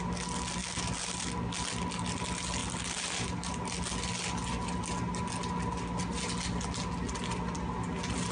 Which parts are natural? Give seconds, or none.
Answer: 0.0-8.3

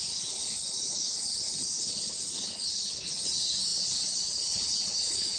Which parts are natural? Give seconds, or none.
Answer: none

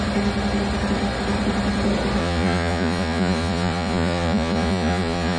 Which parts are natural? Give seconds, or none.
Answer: 0.0-2.2

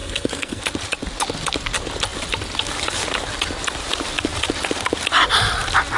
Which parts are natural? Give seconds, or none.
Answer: 0.6-6.0

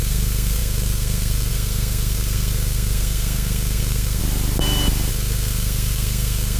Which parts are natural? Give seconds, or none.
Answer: 4.2-5.1

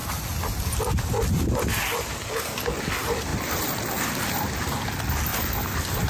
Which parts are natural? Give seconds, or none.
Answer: 0.0-3.3; 4.7-5.3

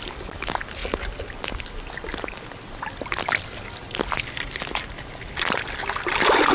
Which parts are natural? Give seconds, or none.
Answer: 0.8-3.4

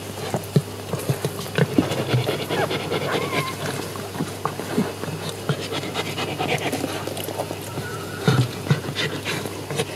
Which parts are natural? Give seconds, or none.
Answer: 0.0-7.9; 8.9-10.0